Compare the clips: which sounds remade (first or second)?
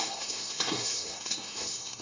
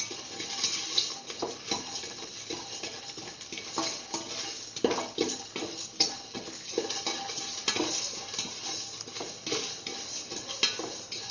first